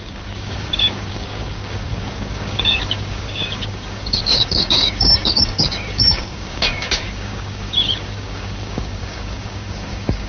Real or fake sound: fake